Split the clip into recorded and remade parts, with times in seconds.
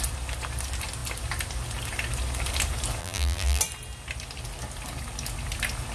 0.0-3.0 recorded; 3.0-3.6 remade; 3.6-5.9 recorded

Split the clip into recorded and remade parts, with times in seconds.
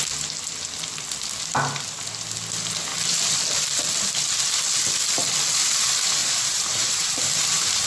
0.0-6.2 recorded; 6.2-7.9 remade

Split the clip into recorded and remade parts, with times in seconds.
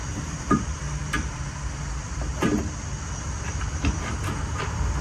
0.0-5.0 remade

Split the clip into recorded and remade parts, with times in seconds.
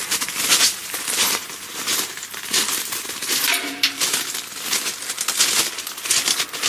0.0-0.8 recorded; 0.8-4.0 remade; 4.0-6.7 recorded